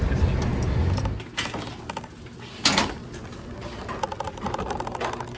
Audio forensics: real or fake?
real